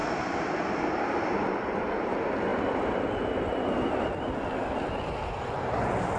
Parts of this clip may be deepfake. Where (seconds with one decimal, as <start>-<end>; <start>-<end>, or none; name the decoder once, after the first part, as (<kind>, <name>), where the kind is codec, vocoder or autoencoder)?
none

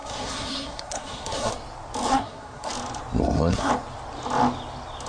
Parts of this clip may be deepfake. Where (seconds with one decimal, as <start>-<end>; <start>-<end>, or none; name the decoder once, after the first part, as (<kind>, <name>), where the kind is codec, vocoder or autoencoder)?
0.0-1.5 (codec, SNAC); 2.1-2.7; 3.2-3.7

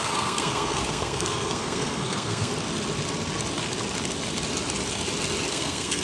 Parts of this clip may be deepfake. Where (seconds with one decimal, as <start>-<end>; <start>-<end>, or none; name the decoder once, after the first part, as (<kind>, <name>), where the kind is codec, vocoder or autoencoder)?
0.0-2.5 (codec, SNAC); 5.5-6.0

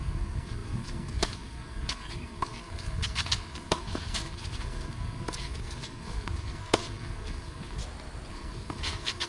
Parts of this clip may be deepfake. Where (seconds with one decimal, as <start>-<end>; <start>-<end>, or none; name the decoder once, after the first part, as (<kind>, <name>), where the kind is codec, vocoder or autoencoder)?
0.0-7.8 (codec, SNAC); 8.3-9.3

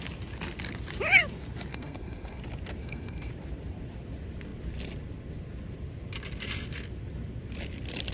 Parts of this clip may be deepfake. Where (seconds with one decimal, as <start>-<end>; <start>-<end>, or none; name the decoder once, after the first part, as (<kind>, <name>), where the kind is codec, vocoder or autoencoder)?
1.7-2.4 (codec, SNAC); 2.8-3.3

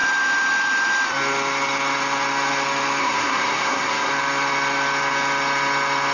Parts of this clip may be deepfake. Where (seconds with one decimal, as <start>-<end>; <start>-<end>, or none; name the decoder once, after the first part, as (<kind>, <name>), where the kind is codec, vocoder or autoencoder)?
3.0-4.1 (codec, SNAC)